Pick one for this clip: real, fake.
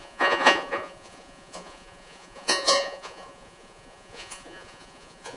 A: fake